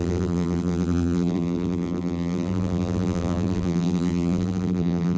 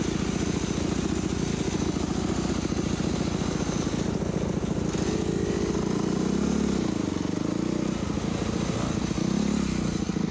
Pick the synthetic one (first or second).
first